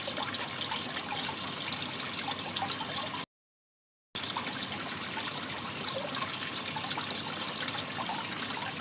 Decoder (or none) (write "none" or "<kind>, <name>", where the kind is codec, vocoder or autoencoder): none